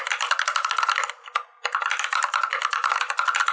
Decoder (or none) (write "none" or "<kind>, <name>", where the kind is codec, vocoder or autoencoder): none